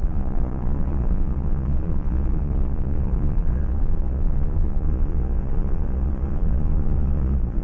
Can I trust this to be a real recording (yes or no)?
no